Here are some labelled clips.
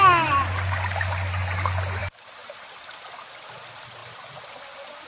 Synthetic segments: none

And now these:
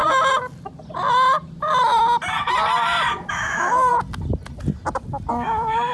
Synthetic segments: 3.3-3.9 (autoencoder, DAC-VAE); 5.3-5.9

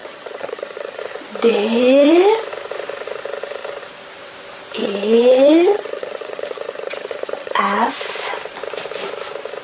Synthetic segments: 0.0-1.0 (vocoder, HiFi-GAN); 1.5-2.1; 4.8-7.9

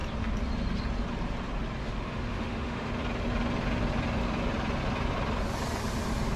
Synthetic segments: 1.8-2.9 (autoencoder, DAC-VAE)

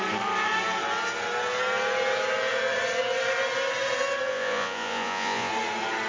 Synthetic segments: 4.3-5.5 (vocoder, Vocos)

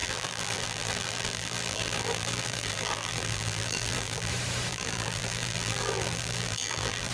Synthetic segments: 0.0-4.3 (vocoder, BigVGAN v2); 4.7-7.1

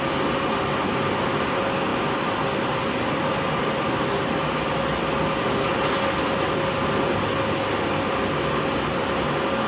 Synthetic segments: none